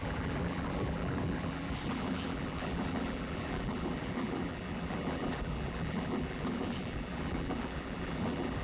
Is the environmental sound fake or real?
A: fake